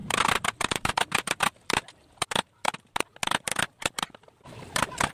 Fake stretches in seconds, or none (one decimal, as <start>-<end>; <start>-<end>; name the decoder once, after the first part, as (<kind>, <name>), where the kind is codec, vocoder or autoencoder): none

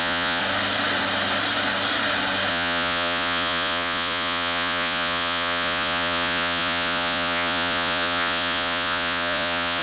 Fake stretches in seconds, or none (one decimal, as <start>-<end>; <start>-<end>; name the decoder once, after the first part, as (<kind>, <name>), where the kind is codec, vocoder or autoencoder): 0.0-0.4 (vocoder, Vocos); 2.5-9.8

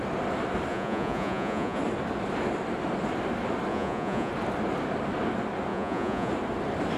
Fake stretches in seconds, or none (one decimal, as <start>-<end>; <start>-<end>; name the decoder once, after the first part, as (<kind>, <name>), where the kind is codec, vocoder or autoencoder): 0.7-1.8 (vocoder, Vocos); 3.7-4.3; 5.7-6.3

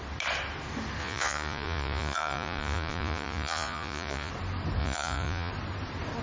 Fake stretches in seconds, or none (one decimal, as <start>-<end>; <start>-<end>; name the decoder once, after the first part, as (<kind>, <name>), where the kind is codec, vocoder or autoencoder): 1.0-4.3 (vocoder, Vocos); 4.8-5.5

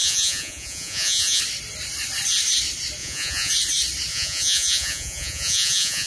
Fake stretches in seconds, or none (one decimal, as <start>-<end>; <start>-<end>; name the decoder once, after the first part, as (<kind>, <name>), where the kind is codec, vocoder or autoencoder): 0.0-1.4 (vocoder, Vocos); 3.0-3.5; 4.1-6.1

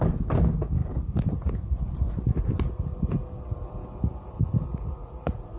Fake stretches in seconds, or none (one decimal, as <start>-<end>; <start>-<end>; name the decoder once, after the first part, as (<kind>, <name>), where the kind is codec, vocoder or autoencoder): 4.7-5.6 (vocoder, Vocos)

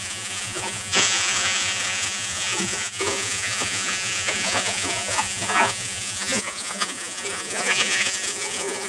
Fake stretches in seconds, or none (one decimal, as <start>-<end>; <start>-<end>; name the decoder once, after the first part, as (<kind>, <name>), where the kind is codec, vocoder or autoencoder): 0.0-8.9 (vocoder, Vocos)